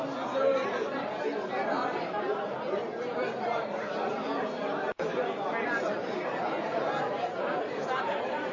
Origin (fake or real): fake